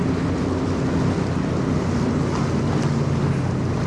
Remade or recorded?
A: recorded